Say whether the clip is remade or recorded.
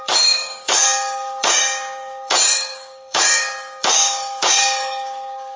remade